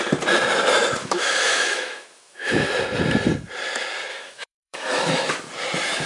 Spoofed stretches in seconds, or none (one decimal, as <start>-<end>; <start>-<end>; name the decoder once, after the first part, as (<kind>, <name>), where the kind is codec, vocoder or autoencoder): 1.0-2.7 (autoencoder, DAC-VAE); 4.1-5.3